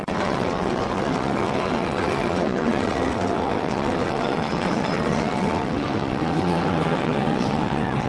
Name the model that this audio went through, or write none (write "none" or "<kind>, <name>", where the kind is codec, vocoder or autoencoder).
vocoder, WaveNeXt